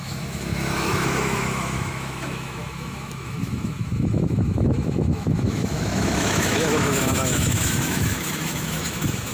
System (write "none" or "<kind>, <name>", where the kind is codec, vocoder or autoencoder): autoencoder, DAC-VAE